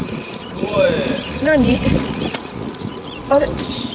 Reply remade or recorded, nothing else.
remade